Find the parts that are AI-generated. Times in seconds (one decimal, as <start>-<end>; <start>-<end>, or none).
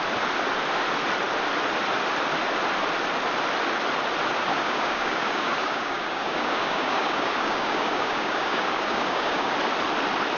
4.5-9.5